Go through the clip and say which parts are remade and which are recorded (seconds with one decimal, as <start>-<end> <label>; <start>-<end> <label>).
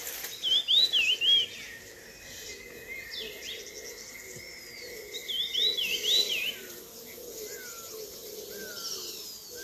0.0-9.6 recorded